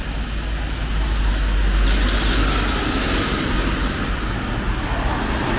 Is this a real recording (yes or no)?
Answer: yes